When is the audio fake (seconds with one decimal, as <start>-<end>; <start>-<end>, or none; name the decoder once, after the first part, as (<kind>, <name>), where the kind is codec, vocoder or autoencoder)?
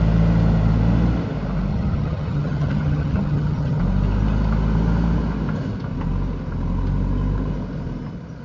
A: 1.7-3.8 (vocoder, HiFi-GAN)